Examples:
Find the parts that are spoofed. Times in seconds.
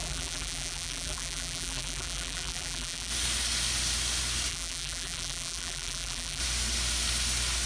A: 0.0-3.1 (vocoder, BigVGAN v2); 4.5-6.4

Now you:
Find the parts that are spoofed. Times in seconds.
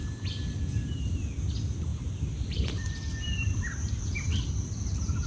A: 1.9-5.3 (vocoder, BigVGAN v2)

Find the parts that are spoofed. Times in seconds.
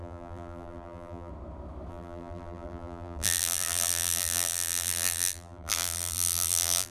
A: 0.0-1.3 (vocoder, BigVGAN v2); 1.9-6.9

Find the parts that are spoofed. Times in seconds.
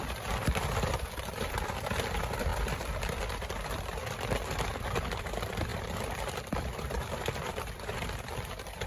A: 0.0-8.9 (vocoder, BigVGAN v2)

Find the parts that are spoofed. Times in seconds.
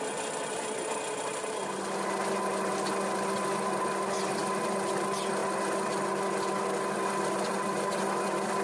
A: none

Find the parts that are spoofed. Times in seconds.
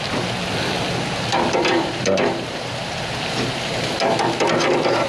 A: 1.3-3.9 (vocoder, BigVGAN v2)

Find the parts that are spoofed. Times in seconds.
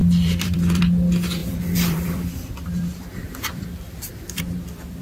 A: 0.0-0.8 (vocoder, BigVGAN v2); 1.4-4.4